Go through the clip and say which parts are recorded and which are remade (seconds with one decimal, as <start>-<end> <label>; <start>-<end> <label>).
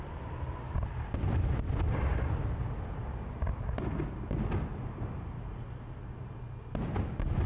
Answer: 0.0-7.5 recorded